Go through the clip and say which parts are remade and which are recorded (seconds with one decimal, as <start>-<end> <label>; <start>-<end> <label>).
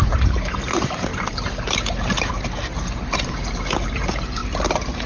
0.0-4.4 remade; 4.4-5.1 recorded